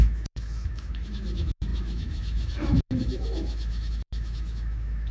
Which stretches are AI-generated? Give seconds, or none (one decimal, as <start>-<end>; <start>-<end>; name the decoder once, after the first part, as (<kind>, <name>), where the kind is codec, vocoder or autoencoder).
0.0-5.1 (autoencoder, DAC-VAE)